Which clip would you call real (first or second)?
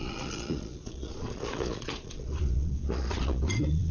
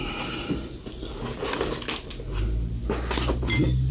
second